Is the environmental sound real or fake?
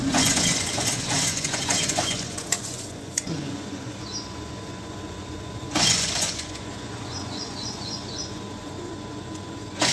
fake